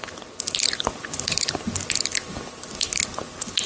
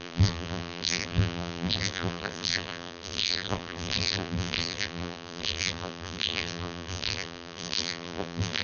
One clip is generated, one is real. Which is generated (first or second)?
second